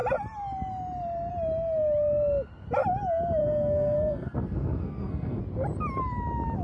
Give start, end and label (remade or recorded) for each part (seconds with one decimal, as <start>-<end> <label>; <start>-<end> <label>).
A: 0.0-3.4 recorded; 3.4-5.4 remade; 5.4-6.6 recorded